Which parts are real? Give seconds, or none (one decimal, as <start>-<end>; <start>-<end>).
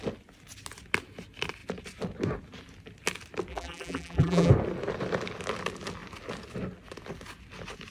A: 0.0-3.5; 4.5-7.9